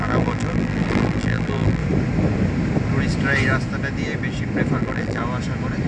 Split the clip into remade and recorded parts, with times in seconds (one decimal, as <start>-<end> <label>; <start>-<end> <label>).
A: 0.0-1.8 remade; 1.8-4.8 recorded; 4.8-5.2 remade; 5.2-5.9 recorded